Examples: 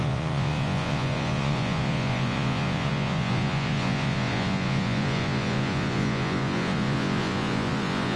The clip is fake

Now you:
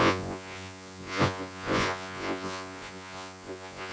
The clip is fake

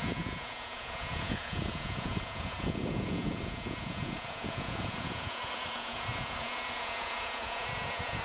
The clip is fake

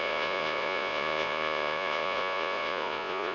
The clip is fake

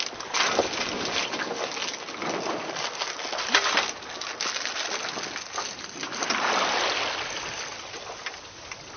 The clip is real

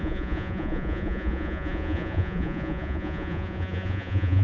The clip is fake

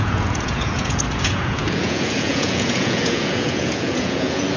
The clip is fake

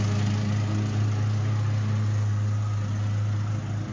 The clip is real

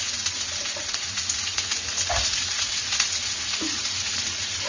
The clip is fake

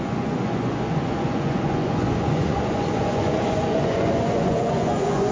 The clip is fake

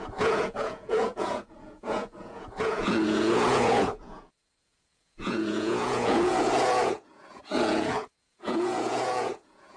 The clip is fake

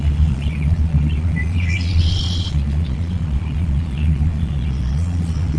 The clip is fake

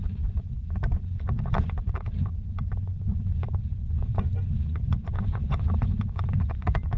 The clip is fake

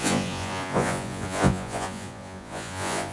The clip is fake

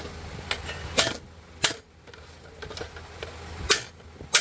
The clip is real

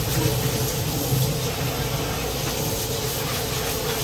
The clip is real